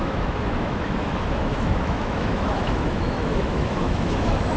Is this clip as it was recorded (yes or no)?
no